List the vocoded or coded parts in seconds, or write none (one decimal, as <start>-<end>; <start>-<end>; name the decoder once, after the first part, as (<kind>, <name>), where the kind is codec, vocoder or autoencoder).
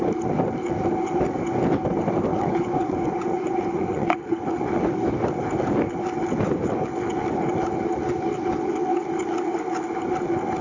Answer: 2.3-4.7 (vocoder, Vocos)